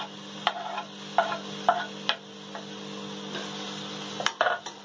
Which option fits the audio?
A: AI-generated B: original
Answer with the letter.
B